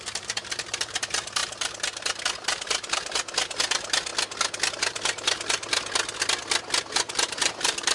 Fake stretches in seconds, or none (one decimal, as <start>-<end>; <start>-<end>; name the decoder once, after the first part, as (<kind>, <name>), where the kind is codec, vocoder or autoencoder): 0.0-4.1 (vocoder, BigVGAN v2); 4.7-5.7; 6.8-7.9